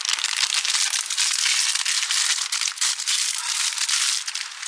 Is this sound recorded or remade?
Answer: recorded